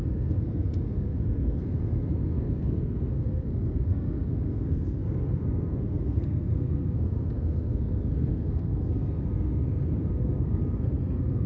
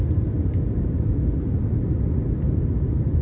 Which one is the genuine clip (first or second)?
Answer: second